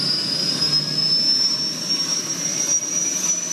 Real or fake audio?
real